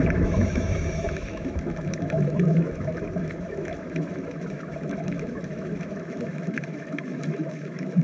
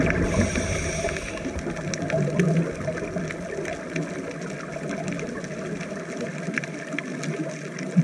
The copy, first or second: first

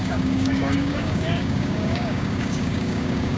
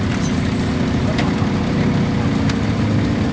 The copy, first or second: first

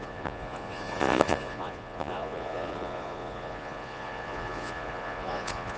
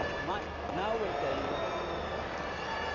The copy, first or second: first